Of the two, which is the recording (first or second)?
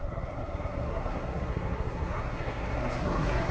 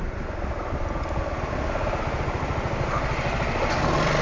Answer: second